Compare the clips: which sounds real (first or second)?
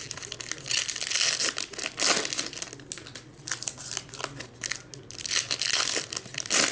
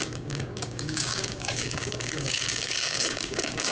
first